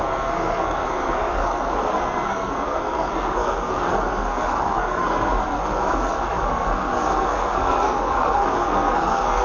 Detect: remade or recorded remade